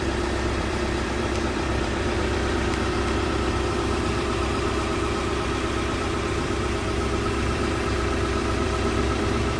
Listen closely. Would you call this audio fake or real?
fake